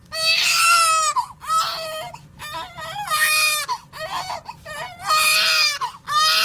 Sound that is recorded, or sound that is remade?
recorded